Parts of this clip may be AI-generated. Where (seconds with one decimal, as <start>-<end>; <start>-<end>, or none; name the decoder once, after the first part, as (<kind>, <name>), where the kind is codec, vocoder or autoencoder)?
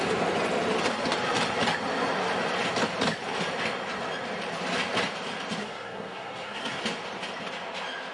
5.6-6.8 (codec, SNAC)